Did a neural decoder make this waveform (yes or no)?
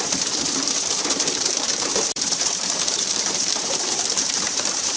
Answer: yes